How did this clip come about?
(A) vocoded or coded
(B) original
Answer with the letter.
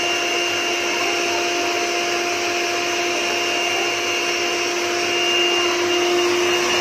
B